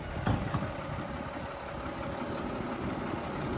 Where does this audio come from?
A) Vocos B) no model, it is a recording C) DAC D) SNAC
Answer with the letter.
B